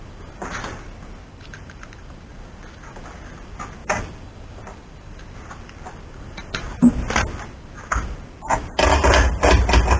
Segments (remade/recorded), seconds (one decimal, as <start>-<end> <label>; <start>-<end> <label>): 0.0-3.8 recorded; 3.8-5.2 remade; 5.2-6.7 recorded; 6.7-7.2 remade; 7.2-10.0 recorded